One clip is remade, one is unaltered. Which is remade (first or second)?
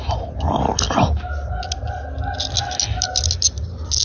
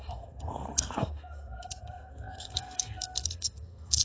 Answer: second